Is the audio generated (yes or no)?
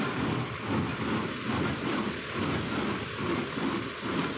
no